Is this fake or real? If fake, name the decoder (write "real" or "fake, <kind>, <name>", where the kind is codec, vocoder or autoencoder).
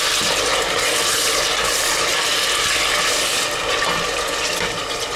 real